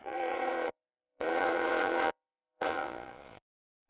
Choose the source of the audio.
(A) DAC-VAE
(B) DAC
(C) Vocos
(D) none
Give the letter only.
C